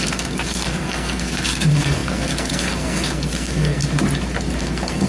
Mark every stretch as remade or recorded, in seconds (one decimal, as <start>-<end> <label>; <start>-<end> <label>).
0.0-3.8 remade; 3.8-4.6 recorded; 4.6-5.1 remade